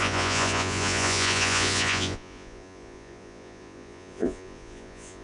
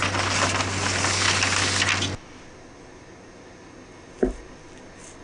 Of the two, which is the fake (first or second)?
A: first